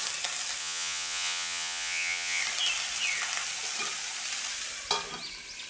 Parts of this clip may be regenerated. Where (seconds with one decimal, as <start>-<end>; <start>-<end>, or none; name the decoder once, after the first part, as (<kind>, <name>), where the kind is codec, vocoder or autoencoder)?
0.6-2.4 (vocoder, Vocos)

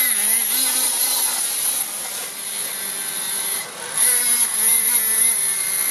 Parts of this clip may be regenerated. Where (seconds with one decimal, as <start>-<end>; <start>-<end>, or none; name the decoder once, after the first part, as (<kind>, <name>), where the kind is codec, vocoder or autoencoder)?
none

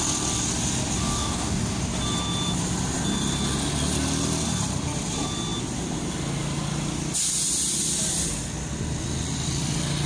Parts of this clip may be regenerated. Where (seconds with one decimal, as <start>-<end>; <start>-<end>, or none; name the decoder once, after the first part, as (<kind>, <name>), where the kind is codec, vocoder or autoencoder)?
1.0-1.8 (codec, DAC)